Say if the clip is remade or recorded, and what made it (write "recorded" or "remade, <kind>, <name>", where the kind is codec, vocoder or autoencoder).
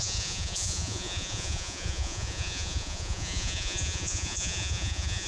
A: remade, vocoder, Vocos